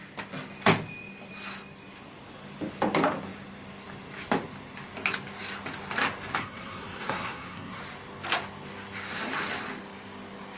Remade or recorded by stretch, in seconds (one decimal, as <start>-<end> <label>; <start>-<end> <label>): 0.0-6.4 recorded; 6.4-7.8 remade; 7.8-10.6 recorded